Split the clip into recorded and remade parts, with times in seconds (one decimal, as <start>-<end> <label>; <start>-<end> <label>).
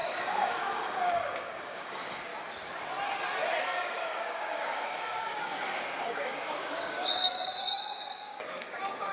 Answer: 0.0-2.3 remade; 2.3-3.6 recorded; 3.6-9.1 remade